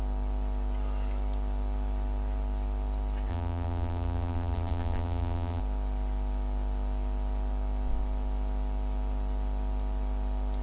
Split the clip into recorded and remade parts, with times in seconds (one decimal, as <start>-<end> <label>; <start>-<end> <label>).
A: 0.0-3.3 recorded; 3.3-5.6 remade; 5.6-10.6 recorded

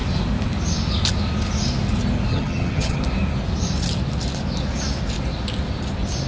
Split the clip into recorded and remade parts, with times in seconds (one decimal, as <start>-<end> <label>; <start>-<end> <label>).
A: 0.0-2.3 recorded; 2.3-3.0 remade; 3.0-6.3 recorded

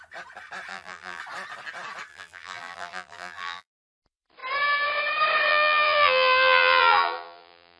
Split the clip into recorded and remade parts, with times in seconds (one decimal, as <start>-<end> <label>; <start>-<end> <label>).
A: 0.0-0.7 recorded; 0.7-1.2 remade; 1.2-2.1 recorded; 2.1-3.7 remade; 3.7-5.5 recorded; 5.5-7.8 remade

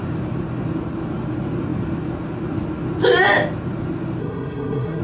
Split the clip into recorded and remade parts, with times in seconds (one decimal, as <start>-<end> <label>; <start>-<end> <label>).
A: 0.0-4.2 recorded; 4.2-5.0 remade

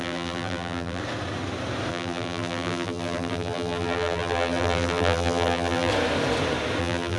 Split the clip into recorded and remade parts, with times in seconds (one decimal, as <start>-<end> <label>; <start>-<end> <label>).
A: 0.0-1.0 remade; 1.0-1.9 recorded; 1.9-5.9 remade; 5.9-6.8 recorded; 6.8-7.2 remade